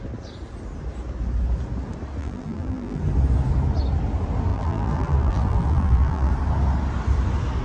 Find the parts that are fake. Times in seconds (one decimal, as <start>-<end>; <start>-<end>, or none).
2.2-3.0; 4.5-6.3